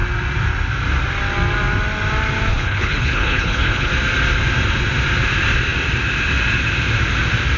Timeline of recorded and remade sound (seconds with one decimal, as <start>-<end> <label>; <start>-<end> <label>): 0.0-2.5 recorded; 2.5-3.9 remade; 3.9-7.6 recorded